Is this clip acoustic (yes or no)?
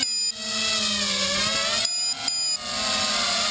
yes